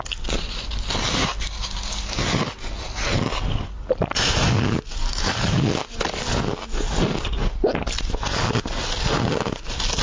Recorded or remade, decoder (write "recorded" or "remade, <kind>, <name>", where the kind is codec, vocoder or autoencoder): recorded